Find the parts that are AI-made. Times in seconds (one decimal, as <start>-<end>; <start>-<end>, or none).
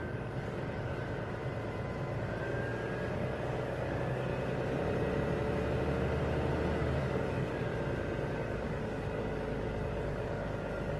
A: 0.0-1.4; 2.4-4.3; 6.8-7.7; 8.3-11.0